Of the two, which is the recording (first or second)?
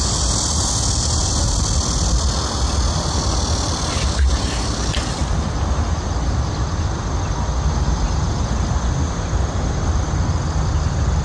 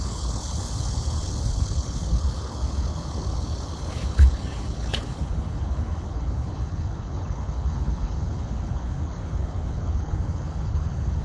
first